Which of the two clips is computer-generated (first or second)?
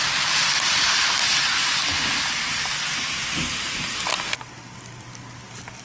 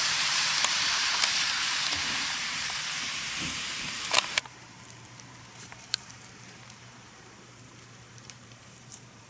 second